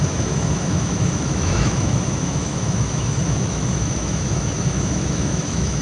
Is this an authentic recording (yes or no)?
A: no